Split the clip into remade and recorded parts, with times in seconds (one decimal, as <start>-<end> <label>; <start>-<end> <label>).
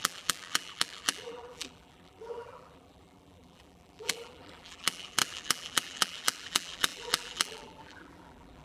0.0-8.6 remade